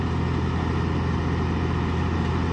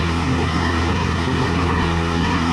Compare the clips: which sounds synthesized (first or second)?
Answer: second